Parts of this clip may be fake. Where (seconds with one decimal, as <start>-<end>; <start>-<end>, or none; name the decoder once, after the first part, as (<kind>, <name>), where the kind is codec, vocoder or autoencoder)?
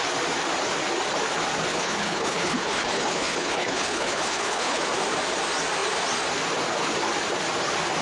1.7-4.8 (codec, HILCodec)